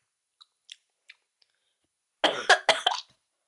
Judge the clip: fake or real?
real